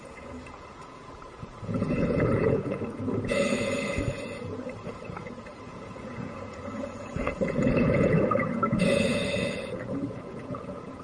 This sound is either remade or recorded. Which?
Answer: remade